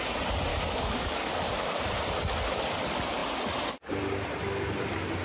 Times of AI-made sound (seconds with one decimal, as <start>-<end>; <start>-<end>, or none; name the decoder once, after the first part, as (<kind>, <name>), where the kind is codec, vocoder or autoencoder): 0.5-1.8 (codec, DAC)